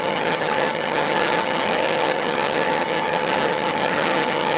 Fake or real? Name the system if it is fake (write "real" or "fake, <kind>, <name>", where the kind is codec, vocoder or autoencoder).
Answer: fake, vocoder, HiFi-GAN